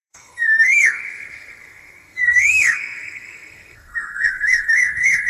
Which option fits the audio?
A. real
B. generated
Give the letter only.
B